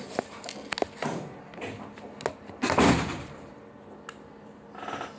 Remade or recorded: recorded